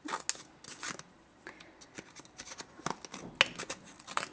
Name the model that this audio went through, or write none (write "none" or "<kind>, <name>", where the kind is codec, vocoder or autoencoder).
none